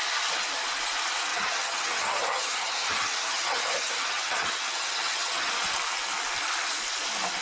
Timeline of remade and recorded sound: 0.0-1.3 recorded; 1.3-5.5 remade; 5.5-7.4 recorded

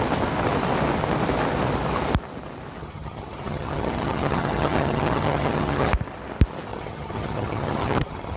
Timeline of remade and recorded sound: 0.0-2.8 recorded; 2.8-5.9 remade; 5.9-6.7 recorded; 6.7-8.4 remade

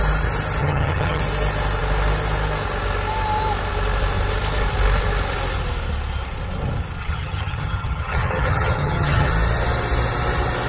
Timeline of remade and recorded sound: 0.0-0.6 recorded; 0.6-1.2 remade; 1.2-7.0 recorded; 7.0-9.3 remade; 9.3-10.7 recorded

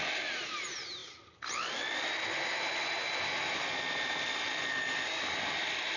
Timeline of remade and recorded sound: 0.0-6.0 recorded

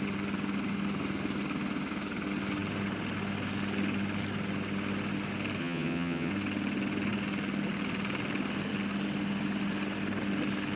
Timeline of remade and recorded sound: 0.0-5.6 recorded; 5.6-6.3 remade; 6.3-10.8 recorded

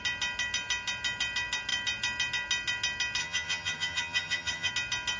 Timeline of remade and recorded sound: 0.0-3.2 recorded; 3.2-4.7 remade; 4.7-5.2 recorded

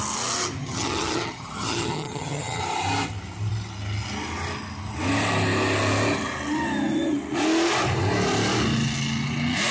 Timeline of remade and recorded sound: 0.0-0.6 recorded; 0.6-2.6 remade; 2.6-9.7 recorded